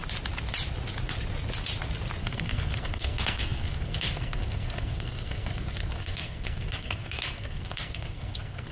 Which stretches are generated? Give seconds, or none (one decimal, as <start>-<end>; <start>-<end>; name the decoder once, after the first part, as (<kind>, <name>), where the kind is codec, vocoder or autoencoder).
2.2-8.7 (codec, SNAC)